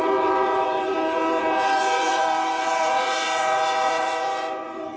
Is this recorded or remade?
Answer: remade